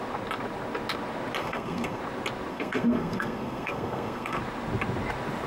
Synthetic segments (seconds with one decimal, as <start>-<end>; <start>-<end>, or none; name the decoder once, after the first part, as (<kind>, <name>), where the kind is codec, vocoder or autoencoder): 1.4-2.0 (codec, SNAC); 2.5-4.4